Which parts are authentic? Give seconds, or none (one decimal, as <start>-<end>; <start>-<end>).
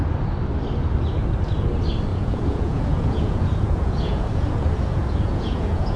0.0-2.1